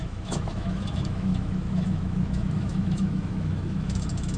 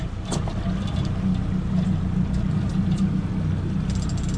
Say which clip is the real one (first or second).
second